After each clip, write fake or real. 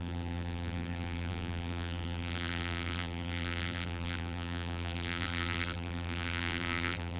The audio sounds fake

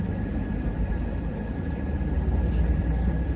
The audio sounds fake